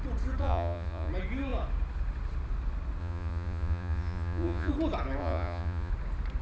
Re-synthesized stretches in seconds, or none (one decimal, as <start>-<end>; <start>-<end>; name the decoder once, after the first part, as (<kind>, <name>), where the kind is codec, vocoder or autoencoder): 0.4-1.1 (vocoder, Vocos); 3.0-4.7; 5.2-5.9